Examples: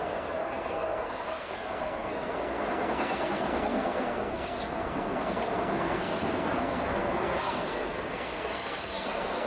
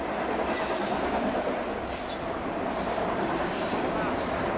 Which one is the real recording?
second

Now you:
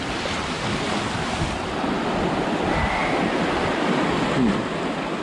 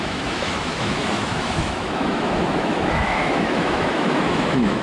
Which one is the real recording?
first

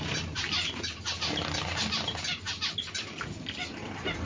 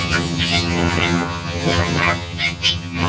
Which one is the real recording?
first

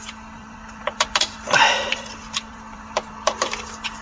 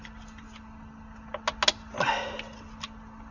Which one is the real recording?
second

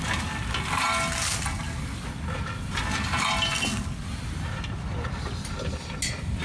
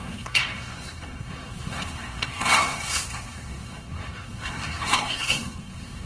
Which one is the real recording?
first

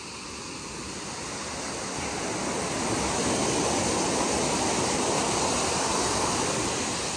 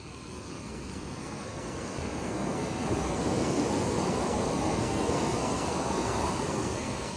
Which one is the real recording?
first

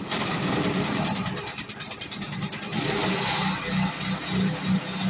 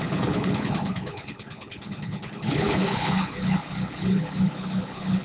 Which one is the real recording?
first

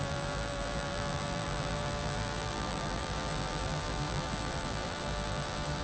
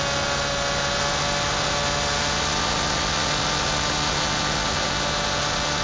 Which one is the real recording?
second